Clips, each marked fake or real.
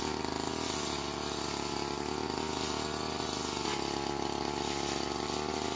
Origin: real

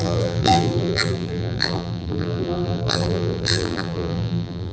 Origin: fake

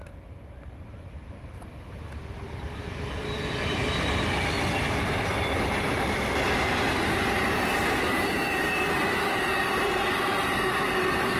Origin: real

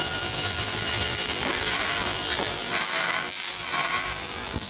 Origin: fake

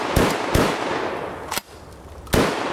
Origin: real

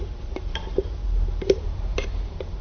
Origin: fake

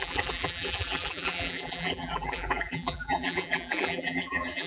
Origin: fake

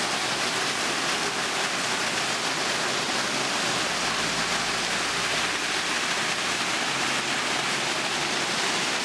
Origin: real